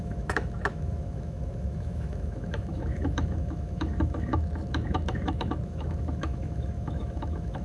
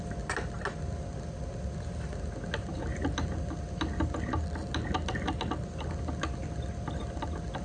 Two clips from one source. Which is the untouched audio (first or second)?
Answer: second